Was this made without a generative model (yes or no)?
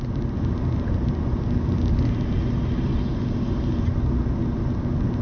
yes